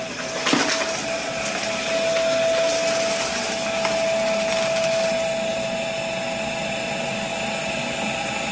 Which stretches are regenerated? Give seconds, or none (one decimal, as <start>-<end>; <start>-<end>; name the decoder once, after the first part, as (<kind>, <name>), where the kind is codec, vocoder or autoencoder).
none